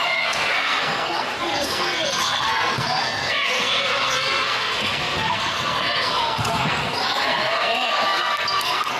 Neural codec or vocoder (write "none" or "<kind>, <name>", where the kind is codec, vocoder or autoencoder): codec, SNAC